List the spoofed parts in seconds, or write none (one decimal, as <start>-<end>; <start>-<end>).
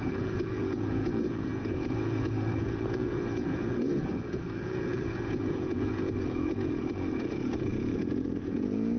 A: 0.0-9.0